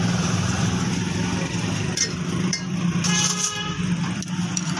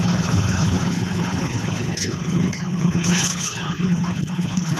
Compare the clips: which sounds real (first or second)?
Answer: first